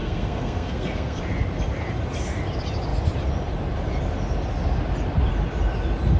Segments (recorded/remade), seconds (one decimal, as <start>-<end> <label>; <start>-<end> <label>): 0.0-1.2 remade; 1.2-6.2 recorded